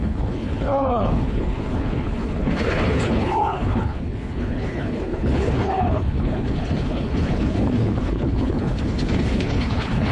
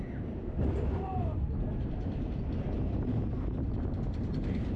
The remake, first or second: first